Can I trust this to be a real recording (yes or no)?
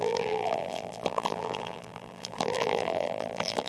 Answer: no